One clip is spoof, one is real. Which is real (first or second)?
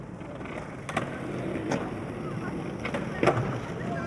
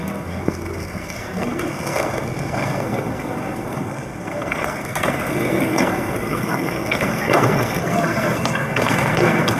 first